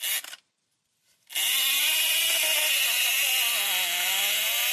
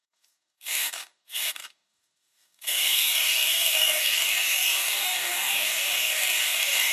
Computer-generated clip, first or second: second